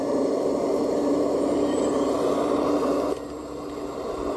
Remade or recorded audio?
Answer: remade